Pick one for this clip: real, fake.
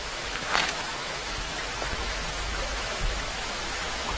fake